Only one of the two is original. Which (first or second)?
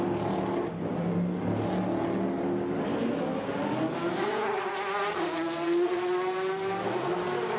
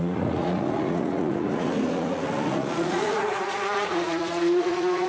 first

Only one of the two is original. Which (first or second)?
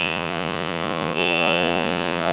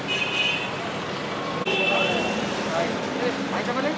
second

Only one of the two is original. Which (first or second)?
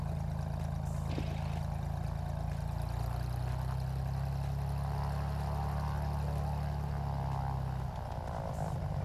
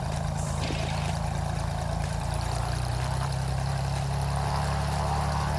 first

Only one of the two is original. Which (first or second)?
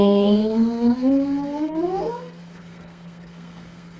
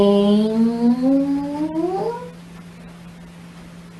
second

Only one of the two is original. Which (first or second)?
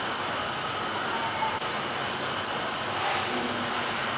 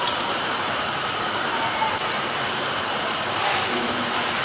first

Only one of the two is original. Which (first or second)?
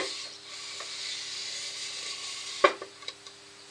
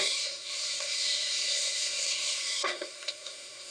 first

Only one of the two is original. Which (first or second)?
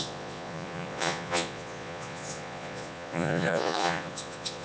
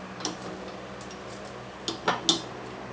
second